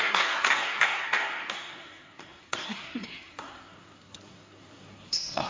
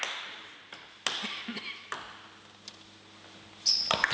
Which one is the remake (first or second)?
first